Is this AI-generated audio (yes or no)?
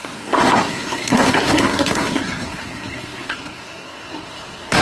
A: yes